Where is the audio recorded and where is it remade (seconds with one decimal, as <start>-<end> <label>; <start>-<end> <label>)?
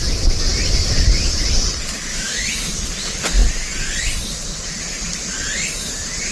0.0-2.1 recorded; 2.1-2.7 remade; 2.7-6.3 recorded